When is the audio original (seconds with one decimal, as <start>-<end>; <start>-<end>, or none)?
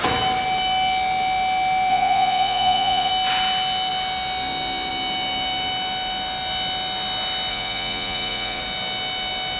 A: 0.0-1.9; 3.1-7.5; 8.6-9.6